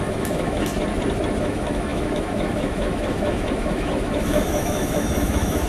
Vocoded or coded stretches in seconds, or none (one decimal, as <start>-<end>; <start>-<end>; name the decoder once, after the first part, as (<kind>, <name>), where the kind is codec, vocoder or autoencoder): 0.0-0.7 (autoencoder, DAC-VAE); 1.4-5.7